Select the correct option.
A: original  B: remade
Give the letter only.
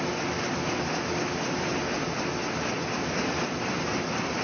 A